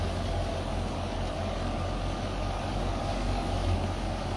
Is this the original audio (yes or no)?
no